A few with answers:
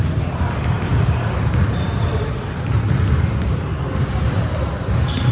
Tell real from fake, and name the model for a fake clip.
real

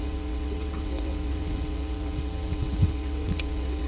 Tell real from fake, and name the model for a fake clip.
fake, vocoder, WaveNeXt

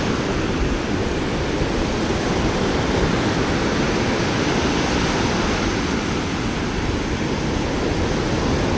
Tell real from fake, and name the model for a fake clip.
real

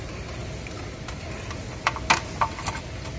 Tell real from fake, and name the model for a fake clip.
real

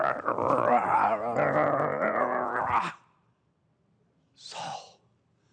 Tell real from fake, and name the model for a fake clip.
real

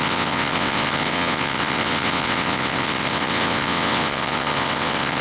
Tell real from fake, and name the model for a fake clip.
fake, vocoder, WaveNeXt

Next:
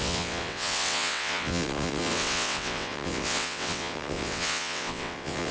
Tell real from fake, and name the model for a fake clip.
fake, vocoder, WaveNeXt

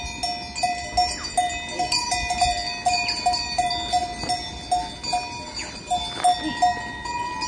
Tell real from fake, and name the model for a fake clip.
real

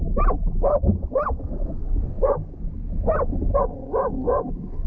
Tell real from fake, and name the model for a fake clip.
real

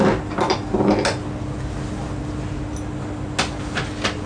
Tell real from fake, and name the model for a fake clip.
real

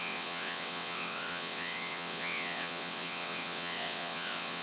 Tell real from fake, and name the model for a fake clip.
fake, vocoder, WaveNeXt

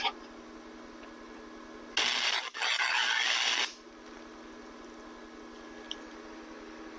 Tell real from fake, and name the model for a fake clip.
real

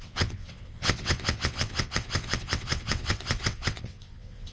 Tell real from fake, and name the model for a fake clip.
fake, vocoder, WaveNeXt